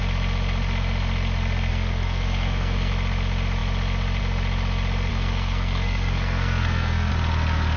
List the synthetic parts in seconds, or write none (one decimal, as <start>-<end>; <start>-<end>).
1.7-2.9; 5.1-7.1